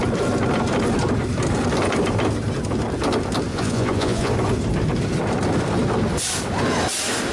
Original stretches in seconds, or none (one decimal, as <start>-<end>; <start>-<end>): 0.0-3.5; 4.3-7.3